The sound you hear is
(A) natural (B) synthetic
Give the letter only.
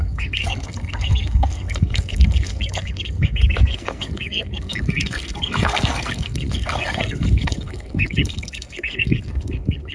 B